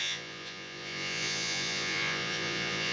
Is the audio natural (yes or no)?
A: no